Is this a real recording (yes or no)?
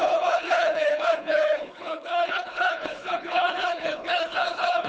no